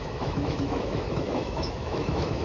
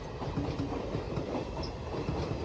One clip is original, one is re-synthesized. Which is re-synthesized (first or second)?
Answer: first